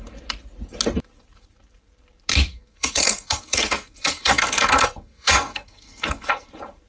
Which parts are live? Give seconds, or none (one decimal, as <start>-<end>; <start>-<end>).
0.0-2.5; 6.5-6.9